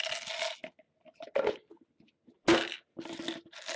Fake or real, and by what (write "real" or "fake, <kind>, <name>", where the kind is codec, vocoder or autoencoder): real